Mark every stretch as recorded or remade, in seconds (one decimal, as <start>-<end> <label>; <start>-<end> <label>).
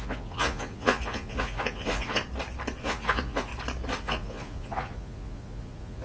0.0-2.2 remade; 2.2-2.8 recorded; 2.8-3.5 remade; 3.5-4.0 recorded; 4.0-6.0 remade